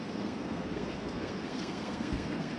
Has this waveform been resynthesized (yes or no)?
yes